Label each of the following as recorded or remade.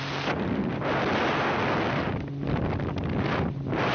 recorded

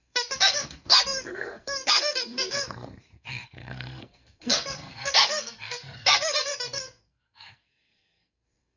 remade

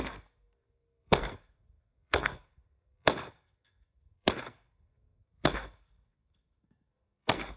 remade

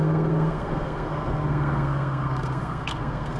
remade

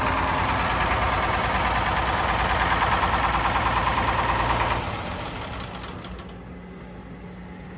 recorded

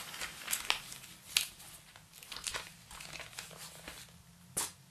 recorded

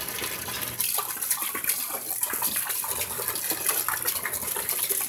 recorded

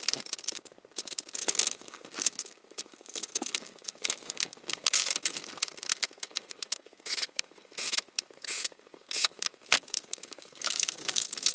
remade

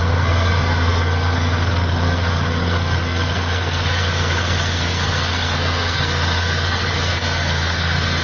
remade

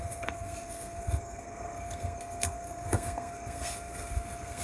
remade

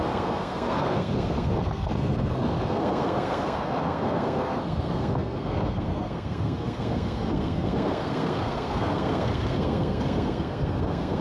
remade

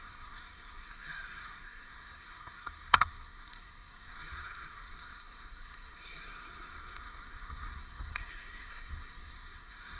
remade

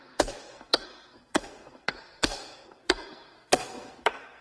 remade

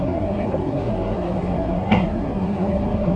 remade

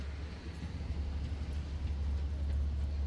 recorded